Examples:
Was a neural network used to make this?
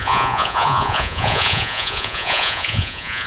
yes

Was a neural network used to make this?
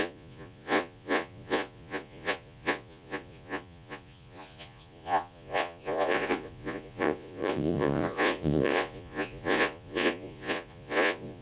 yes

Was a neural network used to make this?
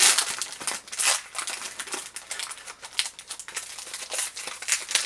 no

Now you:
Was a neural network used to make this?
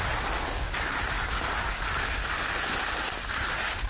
no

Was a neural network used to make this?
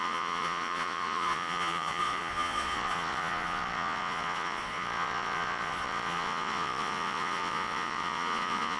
yes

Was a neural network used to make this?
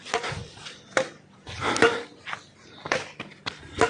no